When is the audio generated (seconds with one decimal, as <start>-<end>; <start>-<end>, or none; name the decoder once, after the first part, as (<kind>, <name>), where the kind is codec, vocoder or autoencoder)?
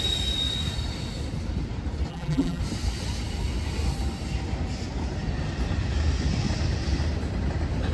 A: 2.1-2.6 (vocoder, BigVGAN v2)